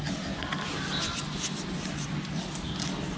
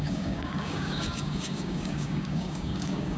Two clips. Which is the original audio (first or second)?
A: first